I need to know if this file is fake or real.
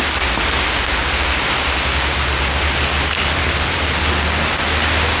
real